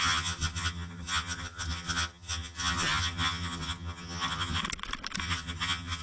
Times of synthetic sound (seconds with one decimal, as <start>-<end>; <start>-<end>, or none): 0.0-4.6; 5.2-6.0